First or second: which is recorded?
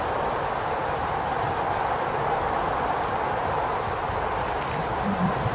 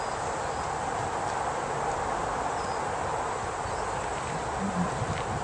second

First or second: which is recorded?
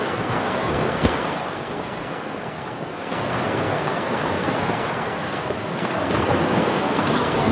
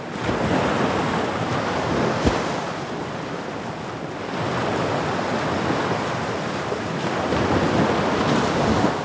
second